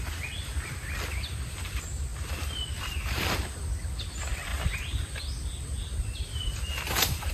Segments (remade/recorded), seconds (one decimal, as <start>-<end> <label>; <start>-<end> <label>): 0.0-7.3 recorded